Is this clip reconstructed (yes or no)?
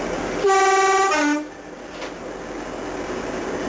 no